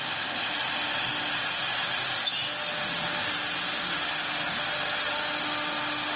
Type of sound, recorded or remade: recorded